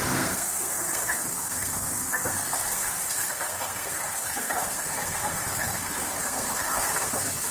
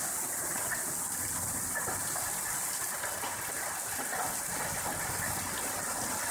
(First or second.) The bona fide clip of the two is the second